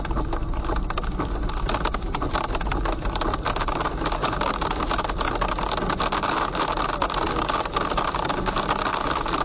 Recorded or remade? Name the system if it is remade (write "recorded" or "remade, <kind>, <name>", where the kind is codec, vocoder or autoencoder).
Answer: recorded